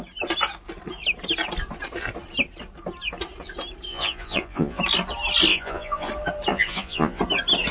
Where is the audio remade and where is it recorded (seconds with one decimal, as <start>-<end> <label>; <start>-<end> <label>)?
0.0-3.9 recorded; 3.9-4.8 remade; 4.8-5.5 recorded; 5.5-6.1 remade; 6.1-6.5 recorded; 6.5-7.2 remade; 7.2-7.7 recorded